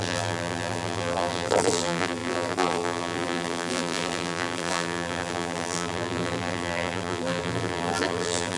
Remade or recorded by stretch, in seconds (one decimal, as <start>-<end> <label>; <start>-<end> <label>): 0.0-8.6 remade